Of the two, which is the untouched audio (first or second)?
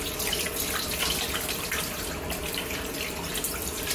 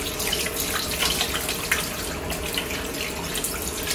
second